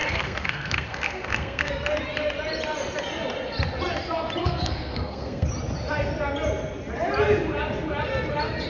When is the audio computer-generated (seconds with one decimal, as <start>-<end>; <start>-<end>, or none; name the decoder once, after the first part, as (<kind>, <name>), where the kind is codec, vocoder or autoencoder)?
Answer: 0.0-1.7 (codec, SNAC); 4.4-5.5